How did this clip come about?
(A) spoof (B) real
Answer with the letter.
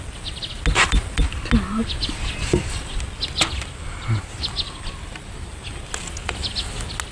B